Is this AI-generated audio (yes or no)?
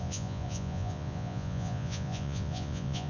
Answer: yes